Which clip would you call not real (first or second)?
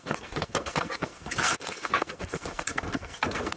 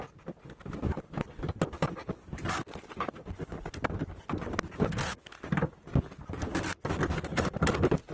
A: first